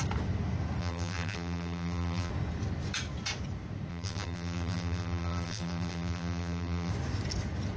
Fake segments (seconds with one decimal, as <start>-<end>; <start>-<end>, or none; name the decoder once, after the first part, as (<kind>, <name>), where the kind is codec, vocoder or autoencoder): 0.8-2.3 (vocoder, BigVGAN v2); 3.9-6.9